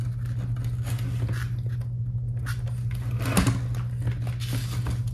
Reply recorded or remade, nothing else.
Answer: recorded